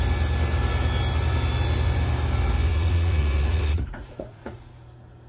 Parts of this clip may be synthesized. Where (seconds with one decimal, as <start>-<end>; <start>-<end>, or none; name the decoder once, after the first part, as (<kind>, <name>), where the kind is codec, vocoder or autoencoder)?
2.7-4.7 (vocoder, Vocos)